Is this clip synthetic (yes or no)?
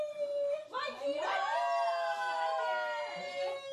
no